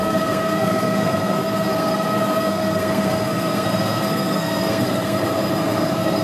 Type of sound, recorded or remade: remade